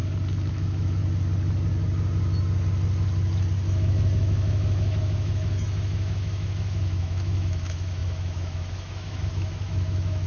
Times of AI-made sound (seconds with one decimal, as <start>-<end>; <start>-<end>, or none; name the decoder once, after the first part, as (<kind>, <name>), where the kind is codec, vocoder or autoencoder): 0.5-1.0 (autoencoder, DAC-VAE); 3.7-10.3